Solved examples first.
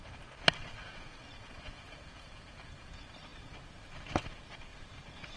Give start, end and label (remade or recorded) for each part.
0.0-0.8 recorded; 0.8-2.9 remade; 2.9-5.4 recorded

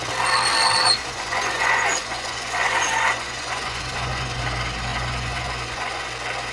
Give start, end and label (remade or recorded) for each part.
0.0-1.0 recorded; 1.0-4.4 remade; 4.4-4.9 recorded; 4.9-6.1 remade; 6.1-6.5 recorded